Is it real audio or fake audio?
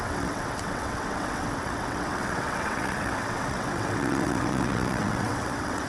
fake